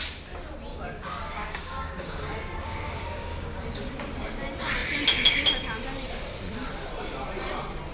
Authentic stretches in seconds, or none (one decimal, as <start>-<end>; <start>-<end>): 0.0-0.7; 3.6-7.9